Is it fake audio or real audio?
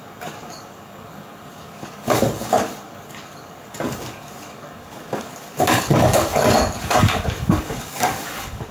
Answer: fake